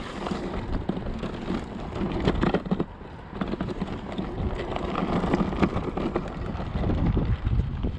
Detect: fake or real real